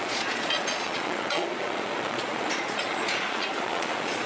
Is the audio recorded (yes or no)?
no